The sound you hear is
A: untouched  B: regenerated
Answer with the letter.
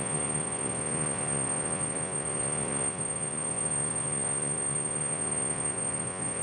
B